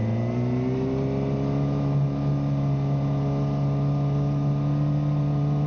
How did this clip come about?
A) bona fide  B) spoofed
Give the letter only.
A